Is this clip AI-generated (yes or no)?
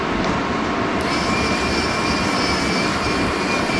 no